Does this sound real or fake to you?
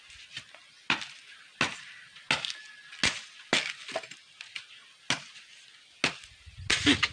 real